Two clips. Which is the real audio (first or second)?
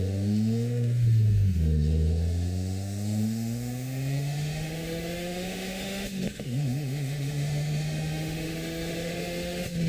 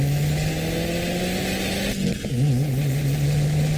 second